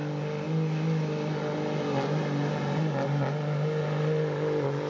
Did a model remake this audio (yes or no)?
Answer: no